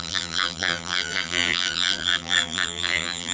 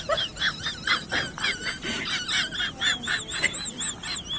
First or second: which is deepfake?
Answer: first